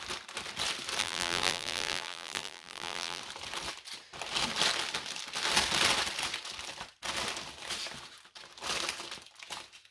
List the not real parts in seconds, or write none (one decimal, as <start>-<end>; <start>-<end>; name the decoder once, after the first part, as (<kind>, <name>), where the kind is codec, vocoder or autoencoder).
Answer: 1.0-3.2 (vocoder, BigVGAN v2)

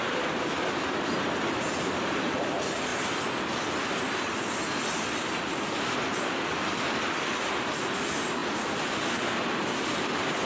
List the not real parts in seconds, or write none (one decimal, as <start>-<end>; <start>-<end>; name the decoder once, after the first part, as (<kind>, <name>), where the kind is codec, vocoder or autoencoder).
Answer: 0.0-2.9 (vocoder, BigVGAN v2); 7.0-10.5